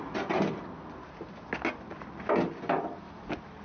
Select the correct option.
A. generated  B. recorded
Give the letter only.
B